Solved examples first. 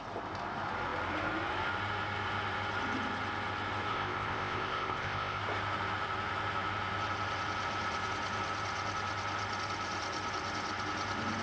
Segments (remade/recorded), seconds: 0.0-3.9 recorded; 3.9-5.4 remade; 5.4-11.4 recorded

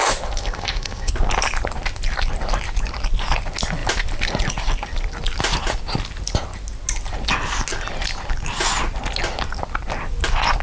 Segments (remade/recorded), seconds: 0.0-0.4 recorded; 0.4-1.1 remade; 1.1-10.6 recorded

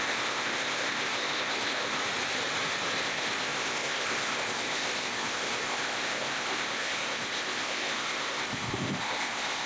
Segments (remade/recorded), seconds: 0.0-2.0 remade; 2.0-3.0 recorded; 3.0-9.7 remade

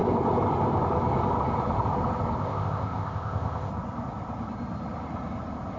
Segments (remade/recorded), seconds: 0.0-2.4 recorded; 2.4-3.7 remade; 3.7-5.8 recorded

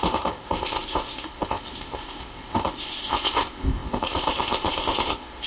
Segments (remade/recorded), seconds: 0.0-5.5 remade

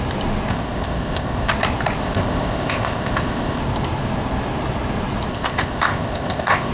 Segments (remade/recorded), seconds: 0.0-0.5 recorded; 0.5-1.5 remade; 1.5-2.0 recorded; 2.0-3.6 remade; 3.6-5.3 recorded; 5.3-6.7 remade

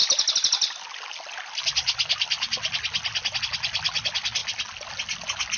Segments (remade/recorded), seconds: 0.0-5.6 recorded